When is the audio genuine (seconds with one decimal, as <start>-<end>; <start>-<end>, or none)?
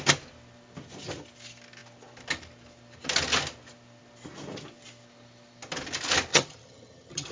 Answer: 0.0-6.3